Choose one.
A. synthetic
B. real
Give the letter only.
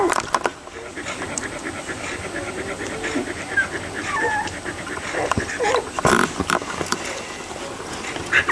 B